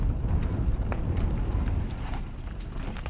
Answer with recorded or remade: recorded